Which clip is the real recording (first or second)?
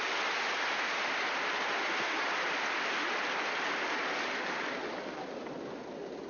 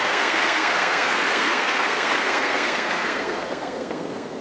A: first